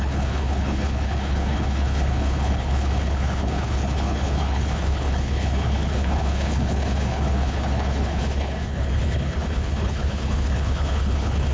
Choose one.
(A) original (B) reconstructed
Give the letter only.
B